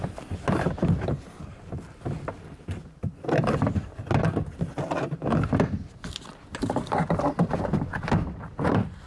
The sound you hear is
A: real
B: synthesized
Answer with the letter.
B